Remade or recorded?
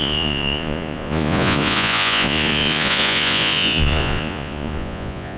remade